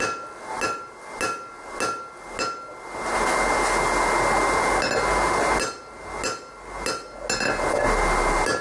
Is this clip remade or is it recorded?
recorded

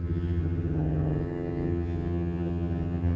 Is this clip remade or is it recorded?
remade